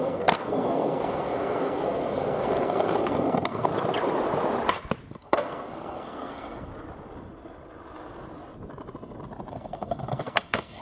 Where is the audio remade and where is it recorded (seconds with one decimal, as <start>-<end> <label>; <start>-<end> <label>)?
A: 0.0-3.7 remade; 3.7-5.1 recorded; 5.1-6.7 remade; 6.7-9.5 recorded; 9.5-10.8 remade